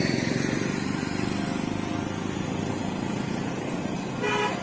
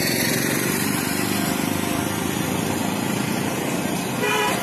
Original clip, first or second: first